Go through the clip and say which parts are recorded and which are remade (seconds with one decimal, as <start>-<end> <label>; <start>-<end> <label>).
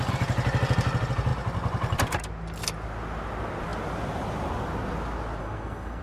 0.0-5.4 recorded; 5.4-6.0 remade